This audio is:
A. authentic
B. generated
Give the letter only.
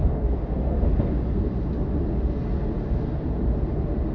A